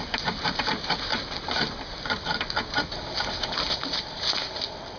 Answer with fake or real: real